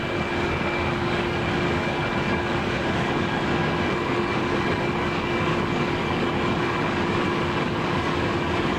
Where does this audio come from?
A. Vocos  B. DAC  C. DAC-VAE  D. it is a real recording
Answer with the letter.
B